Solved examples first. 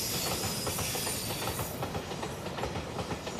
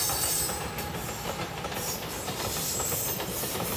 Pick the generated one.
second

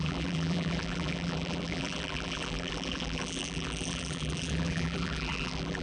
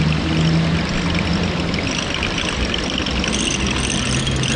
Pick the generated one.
first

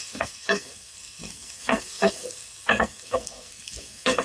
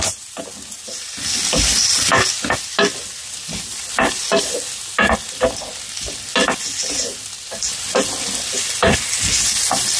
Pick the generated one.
first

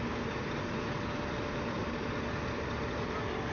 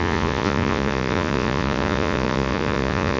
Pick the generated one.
second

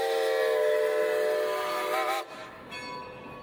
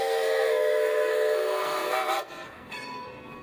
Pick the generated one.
second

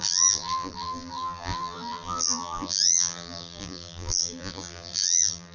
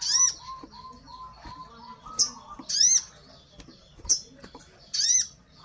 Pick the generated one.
first